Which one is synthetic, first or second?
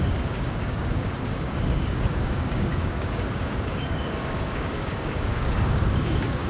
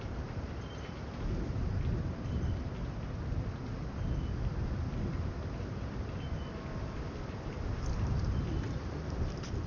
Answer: first